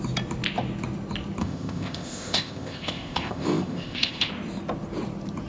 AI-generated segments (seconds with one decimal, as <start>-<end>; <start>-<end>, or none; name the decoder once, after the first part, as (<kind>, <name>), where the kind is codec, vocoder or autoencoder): 1.4-4.3 (codec, ZipCodec)